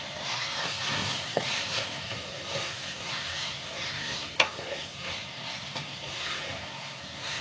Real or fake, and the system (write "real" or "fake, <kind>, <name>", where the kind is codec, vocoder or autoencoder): fake, codec, SNAC